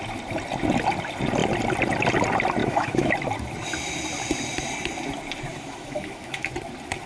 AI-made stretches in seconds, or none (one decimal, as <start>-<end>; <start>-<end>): 2.6-3.1; 5.5-6.5